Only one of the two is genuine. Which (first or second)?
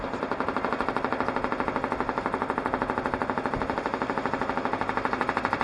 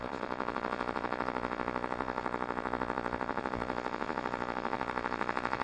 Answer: first